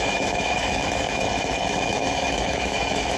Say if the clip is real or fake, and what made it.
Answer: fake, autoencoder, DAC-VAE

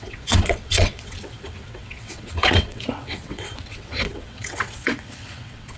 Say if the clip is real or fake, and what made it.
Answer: fake, vocoder, WaveNeXt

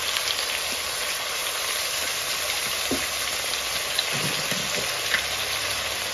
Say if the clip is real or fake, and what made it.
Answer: real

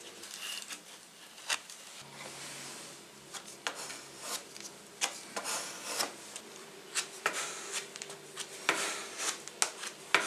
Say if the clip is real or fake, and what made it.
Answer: real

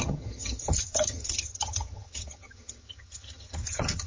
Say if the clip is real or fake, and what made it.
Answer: fake, vocoder, HiFi-GAN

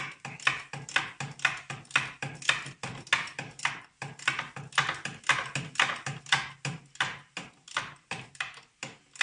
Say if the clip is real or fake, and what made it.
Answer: real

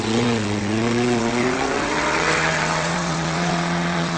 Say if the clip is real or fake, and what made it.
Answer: fake, vocoder, WaveNeXt